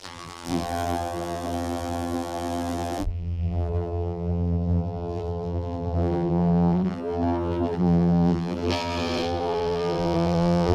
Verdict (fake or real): fake